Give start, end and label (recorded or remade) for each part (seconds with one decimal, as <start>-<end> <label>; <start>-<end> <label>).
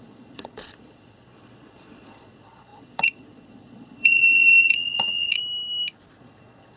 0.0-5.4 remade; 5.4-6.2 recorded; 6.2-6.8 remade